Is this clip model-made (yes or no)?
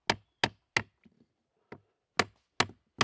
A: no